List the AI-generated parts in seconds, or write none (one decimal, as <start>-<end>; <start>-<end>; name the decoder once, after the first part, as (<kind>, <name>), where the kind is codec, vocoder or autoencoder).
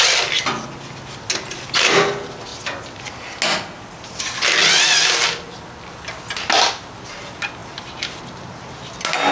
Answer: none